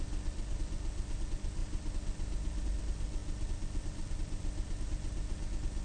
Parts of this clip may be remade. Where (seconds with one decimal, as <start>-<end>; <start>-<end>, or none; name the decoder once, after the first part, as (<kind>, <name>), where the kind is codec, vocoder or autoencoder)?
none